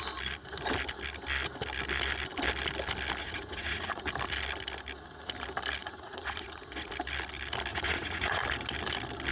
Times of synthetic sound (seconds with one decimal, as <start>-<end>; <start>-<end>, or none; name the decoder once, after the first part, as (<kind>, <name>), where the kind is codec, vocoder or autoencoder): 3.2-4.0 (vocoder, Vocos); 5.8-6.9; 7.7-8.4